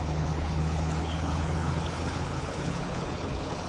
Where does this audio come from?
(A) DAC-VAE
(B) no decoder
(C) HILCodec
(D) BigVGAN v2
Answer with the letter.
C